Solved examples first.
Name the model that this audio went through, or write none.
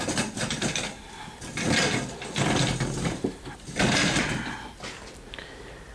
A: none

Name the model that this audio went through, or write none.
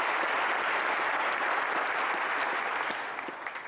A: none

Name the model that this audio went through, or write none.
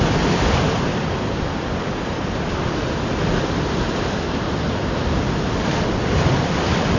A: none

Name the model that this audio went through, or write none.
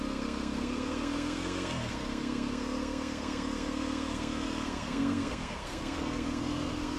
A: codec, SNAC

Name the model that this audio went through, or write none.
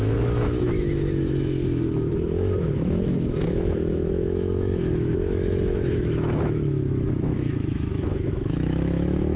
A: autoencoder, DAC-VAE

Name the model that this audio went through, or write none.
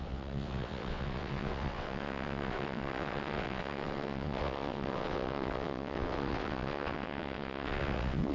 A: vocoder, WaveNeXt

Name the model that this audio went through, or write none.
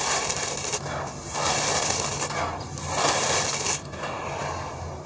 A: none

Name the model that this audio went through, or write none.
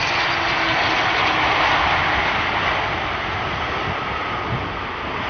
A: none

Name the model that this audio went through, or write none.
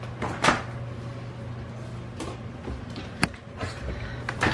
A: none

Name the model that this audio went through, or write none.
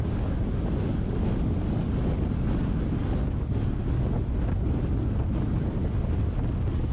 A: none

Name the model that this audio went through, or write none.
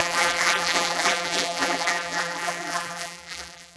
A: vocoder, BigVGAN v2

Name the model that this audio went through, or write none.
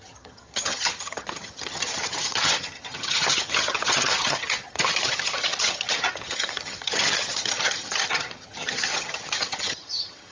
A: vocoder, HiFi-GAN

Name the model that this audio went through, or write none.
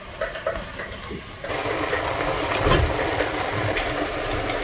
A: none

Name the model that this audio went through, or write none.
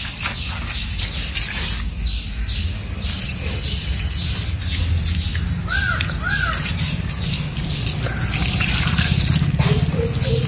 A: none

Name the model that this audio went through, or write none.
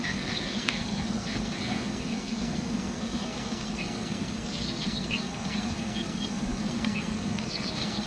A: codec, SNAC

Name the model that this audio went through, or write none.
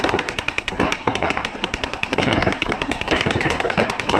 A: codec, SNAC